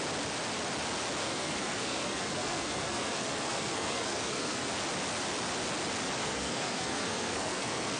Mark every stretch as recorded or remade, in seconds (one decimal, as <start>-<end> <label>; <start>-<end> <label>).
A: 0.0-1.2 recorded; 1.2-4.7 remade; 4.7-6.2 recorded; 6.2-8.0 remade